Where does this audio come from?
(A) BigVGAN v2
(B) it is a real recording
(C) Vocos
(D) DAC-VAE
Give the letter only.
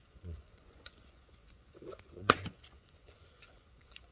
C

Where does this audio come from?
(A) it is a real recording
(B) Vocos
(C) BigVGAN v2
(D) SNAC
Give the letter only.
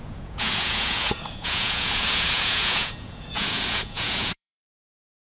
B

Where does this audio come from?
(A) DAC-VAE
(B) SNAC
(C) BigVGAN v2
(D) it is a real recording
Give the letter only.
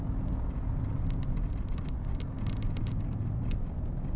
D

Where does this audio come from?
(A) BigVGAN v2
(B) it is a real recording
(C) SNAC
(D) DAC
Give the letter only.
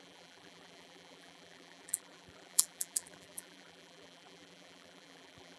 A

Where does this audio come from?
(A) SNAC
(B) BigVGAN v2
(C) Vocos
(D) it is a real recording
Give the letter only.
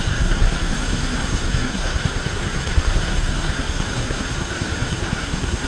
A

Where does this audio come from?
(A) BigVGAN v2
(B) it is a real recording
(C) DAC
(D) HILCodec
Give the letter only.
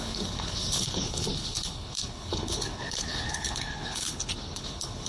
D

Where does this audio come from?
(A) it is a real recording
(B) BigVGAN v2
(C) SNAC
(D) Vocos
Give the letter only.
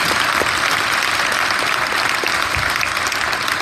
A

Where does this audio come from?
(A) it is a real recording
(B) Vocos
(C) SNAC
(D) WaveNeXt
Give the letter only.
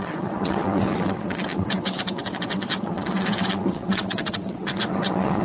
D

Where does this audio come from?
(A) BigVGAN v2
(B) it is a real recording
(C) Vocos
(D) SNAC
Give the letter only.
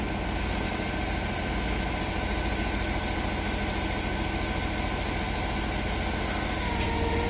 B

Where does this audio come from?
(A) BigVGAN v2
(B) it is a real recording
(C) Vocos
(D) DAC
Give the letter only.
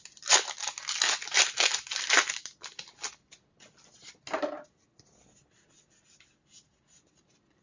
B